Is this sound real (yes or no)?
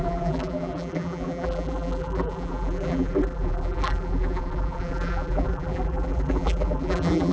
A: no